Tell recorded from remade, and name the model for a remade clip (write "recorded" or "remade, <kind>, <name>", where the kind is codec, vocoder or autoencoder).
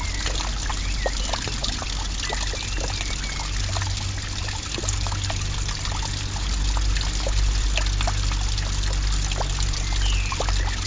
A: recorded